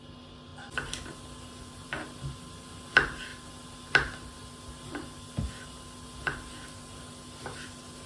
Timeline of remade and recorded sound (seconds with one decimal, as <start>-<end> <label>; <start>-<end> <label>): 0.0-8.1 recorded